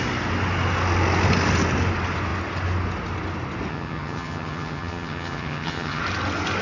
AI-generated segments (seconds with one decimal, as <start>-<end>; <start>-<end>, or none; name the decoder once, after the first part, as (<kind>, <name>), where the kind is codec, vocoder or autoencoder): 3.7-6.0 (vocoder, HiFi-GAN)